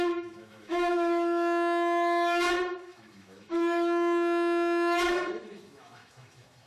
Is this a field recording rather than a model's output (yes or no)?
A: no